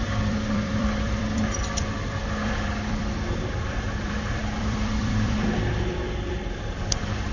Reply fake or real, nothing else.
fake